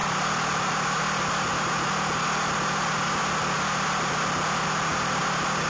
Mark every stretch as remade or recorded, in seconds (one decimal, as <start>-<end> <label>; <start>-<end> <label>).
0.0-5.7 recorded